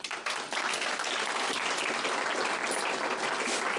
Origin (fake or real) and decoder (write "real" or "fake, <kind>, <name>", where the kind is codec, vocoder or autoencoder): real